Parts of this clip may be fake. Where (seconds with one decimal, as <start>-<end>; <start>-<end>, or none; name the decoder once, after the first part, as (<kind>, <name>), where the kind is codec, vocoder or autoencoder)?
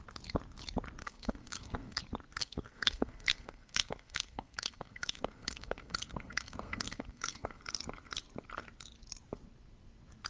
1.0-2.0 (codec, SNAC); 2.4-7.6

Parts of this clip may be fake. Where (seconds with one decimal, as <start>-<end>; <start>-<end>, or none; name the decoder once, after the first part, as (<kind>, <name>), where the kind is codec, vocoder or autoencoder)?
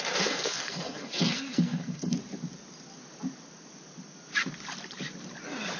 0.0-2.2 (codec, SNAC)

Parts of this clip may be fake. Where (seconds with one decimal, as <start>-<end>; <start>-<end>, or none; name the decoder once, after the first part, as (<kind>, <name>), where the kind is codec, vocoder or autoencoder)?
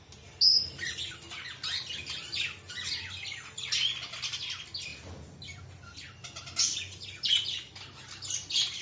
none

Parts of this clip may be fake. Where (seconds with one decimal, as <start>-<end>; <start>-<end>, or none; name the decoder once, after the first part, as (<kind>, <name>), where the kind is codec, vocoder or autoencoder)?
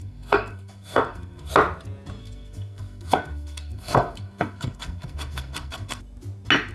0.0-1.5 (codec, SNAC); 2.2-6.0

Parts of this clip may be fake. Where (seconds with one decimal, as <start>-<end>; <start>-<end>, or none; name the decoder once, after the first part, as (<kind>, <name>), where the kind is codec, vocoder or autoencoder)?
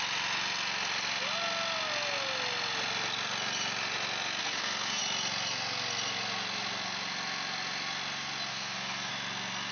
4.4-5.0 (codec, SNAC); 8.5-9.1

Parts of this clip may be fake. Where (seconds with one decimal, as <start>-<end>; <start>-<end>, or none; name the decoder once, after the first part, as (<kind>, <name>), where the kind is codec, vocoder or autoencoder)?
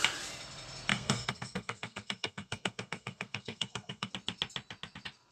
0.9-4.1 (codec, SNAC)